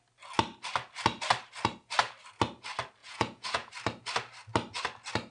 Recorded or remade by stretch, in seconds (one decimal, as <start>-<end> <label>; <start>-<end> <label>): 0.0-3.0 recorded; 3.0-3.7 remade; 3.7-5.3 recorded